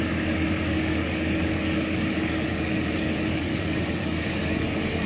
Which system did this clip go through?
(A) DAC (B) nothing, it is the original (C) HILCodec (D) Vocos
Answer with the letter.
A